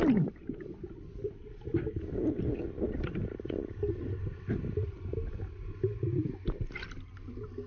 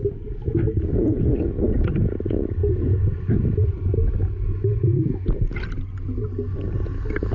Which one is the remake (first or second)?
first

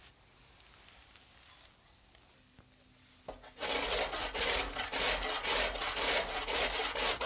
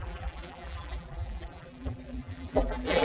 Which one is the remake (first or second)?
second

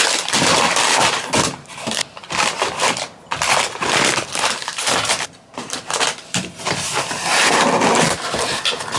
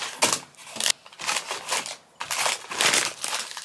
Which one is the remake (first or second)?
first